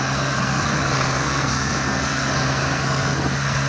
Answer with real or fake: fake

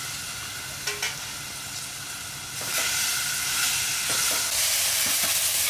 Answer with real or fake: real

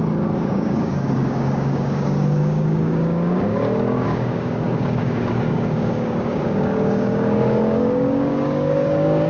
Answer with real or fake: fake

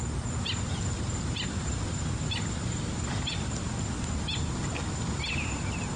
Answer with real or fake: real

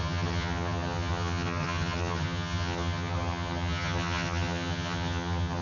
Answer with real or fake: fake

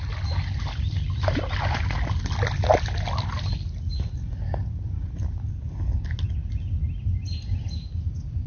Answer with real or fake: real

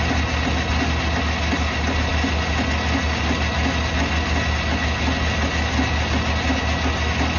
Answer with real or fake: real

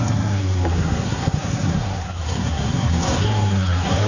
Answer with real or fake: fake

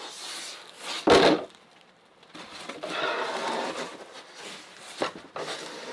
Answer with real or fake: real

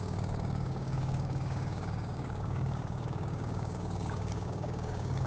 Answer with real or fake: fake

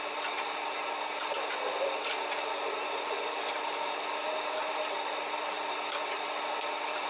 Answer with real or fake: real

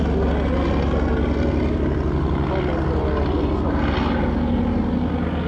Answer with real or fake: real